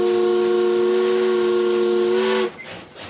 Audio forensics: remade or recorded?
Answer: recorded